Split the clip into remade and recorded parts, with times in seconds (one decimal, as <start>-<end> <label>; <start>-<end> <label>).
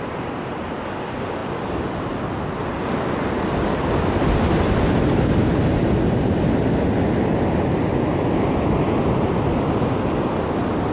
0.0-10.9 recorded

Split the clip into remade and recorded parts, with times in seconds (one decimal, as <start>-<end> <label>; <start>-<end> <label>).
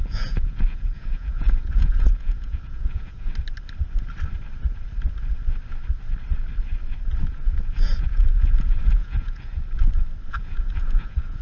0.0-3.3 remade; 3.3-7.2 recorded; 7.2-9.5 remade; 9.5-10.3 recorded; 10.3-11.4 remade